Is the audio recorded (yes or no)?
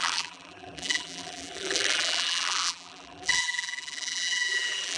no